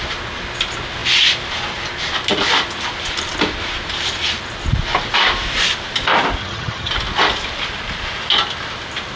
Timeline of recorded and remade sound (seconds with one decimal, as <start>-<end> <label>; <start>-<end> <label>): 0.0-6.4 recorded; 6.4-6.9 remade; 6.9-9.2 recorded

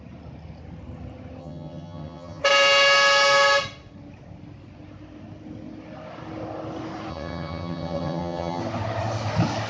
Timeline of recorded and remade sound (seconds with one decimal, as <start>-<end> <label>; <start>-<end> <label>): 0.0-1.4 recorded; 1.4-2.4 remade; 2.4-7.1 recorded; 7.1-8.6 remade; 8.6-9.7 recorded

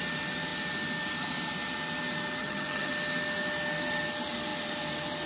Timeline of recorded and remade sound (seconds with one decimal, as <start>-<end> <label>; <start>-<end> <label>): 0.0-2.4 recorded; 2.4-2.9 remade; 2.9-5.3 recorded

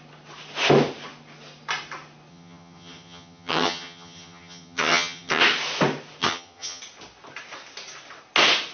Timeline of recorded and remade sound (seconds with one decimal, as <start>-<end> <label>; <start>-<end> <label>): 0.0-2.3 recorded; 2.3-5.4 remade; 5.4-6.2 recorded; 6.2-6.8 remade; 6.8-8.7 recorded

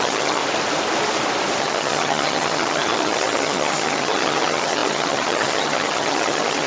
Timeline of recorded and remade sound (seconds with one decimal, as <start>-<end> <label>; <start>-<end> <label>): 0.0-0.4 remade; 0.4-1.6 recorded; 1.6-6.7 remade

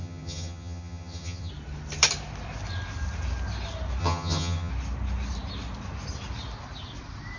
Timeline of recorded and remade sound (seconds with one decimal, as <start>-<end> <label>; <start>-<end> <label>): 0.0-1.5 remade; 1.5-4.0 recorded; 4.0-4.7 remade; 4.7-7.4 recorded

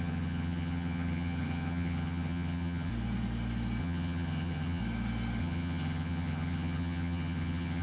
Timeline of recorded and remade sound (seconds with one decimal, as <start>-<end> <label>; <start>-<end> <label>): 0.0-2.9 remade; 2.9-3.8 recorded; 3.8-4.8 remade; 4.8-5.4 recorded; 5.4-7.8 remade